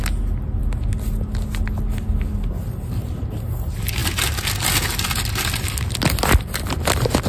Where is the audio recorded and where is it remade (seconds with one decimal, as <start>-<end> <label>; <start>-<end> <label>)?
0.0-7.3 recorded